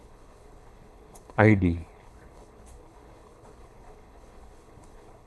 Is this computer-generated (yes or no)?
yes